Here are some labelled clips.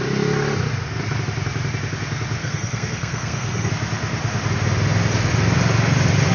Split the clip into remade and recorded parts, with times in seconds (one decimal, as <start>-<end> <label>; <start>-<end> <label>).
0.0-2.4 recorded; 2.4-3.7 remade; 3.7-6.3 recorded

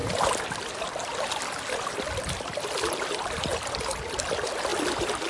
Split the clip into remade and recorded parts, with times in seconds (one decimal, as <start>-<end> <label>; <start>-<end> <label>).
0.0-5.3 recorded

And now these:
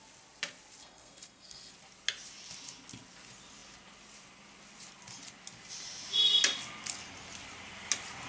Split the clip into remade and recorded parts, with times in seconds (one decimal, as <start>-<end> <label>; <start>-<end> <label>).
0.0-0.8 recorded; 0.8-1.7 remade; 1.7-8.3 recorded

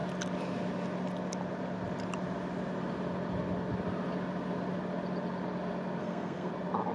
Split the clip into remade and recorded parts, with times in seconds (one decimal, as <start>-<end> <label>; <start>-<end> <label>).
0.0-6.0 recorded; 6.0-6.5 remade; 6.5-6.9 recorded